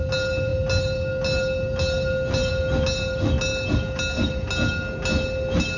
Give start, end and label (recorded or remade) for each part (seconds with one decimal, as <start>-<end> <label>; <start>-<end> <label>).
0.0-5.8 recorded